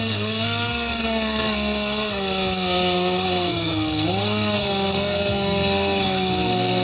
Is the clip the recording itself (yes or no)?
no